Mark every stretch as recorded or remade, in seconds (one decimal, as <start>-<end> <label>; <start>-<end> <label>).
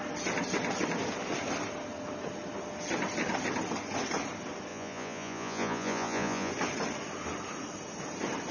0.0-4.7 recorded; 4.7-6.5 remade; 6.5-8.5 recorded